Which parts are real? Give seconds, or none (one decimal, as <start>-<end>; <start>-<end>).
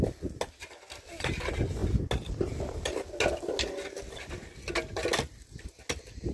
0.0-6.3